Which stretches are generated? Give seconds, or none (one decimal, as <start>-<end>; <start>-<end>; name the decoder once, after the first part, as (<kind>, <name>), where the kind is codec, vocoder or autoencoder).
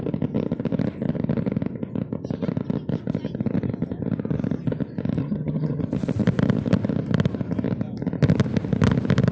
5.2-5.8 (vocoder, HiFi-GAN)